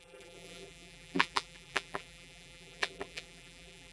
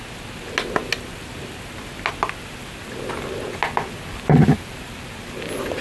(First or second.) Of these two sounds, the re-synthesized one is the first